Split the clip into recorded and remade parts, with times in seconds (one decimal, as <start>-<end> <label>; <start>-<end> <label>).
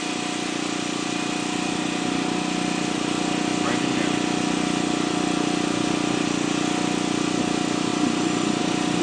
0.0-9.0 recorded